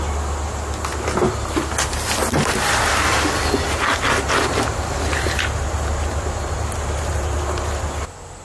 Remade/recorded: recorded